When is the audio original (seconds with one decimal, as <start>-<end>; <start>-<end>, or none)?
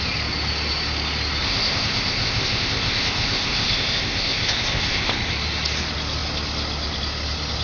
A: 0.0-1.4; 5.3-7.6